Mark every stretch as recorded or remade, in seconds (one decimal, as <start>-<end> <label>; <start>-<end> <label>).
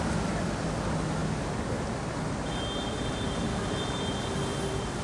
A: 0.0-5.0 recorded